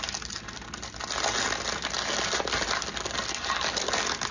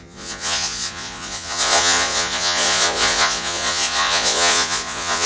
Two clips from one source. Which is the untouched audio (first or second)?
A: first